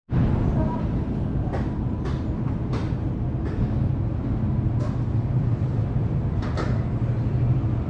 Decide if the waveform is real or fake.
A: real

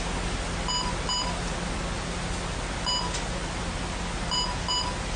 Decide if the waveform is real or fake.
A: real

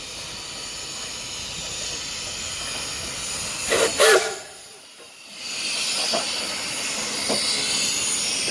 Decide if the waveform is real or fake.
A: real